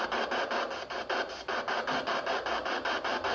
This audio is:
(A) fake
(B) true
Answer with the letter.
B